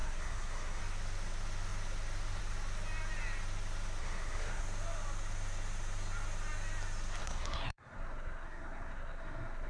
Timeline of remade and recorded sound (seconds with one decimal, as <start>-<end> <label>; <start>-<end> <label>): 0.0-0.8 remade; 0.8-4.0 recorded; 4.0-4.6 remade; 4.6-7.2 recorded; 7.2-9.7 remade